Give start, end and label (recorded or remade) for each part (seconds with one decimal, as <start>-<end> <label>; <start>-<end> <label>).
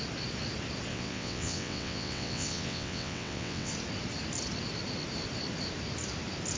0.0-0.9 recorded; 0.9-3.7 remade; 3.7-6.6 recorded